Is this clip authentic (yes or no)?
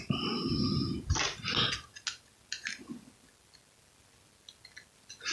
yes